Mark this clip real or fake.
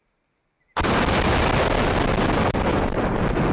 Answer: real